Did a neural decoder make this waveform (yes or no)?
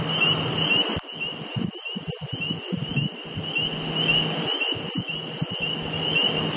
no